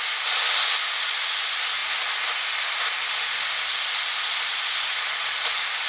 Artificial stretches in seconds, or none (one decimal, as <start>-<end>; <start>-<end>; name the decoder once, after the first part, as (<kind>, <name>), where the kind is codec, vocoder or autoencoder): none